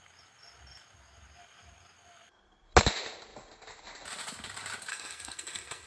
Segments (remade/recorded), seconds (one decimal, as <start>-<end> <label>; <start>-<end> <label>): 0.0-4.9 recorded; 4.9-5.9 remade